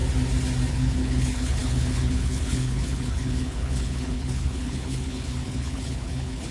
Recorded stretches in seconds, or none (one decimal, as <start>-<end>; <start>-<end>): 0.0-0.7